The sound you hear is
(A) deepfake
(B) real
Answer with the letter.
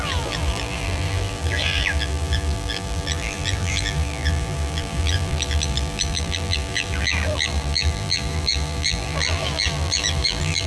A